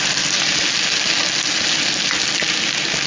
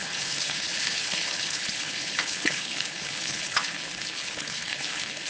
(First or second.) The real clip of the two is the first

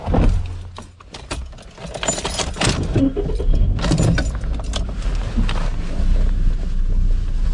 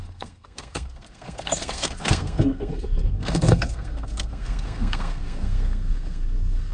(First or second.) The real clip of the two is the first